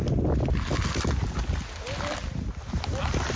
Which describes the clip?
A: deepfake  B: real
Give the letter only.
B